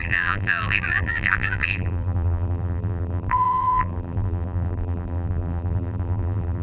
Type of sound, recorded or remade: remade